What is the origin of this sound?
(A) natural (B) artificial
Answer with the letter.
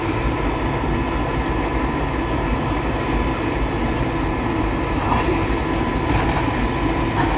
A